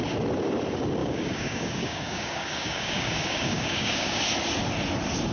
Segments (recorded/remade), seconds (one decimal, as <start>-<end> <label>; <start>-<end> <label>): 0.0-1.0 recorded; 1.0-4.2 remade; 4.2-5.3 recorded

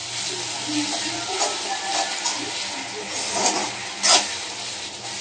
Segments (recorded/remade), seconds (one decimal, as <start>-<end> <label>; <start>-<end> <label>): 0.0-5.2 recorded

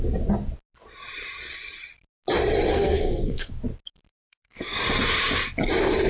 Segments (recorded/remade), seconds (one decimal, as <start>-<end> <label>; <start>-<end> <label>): 0.0-2.7 recorded; 2.7-3.5 remade; 3.5-4.1 recorded; 4.1-4.8 remade; 4.8-6.1 recorded

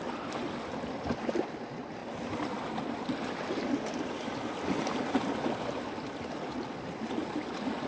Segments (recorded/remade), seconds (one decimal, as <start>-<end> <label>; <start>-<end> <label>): 0.0-7.9 recorded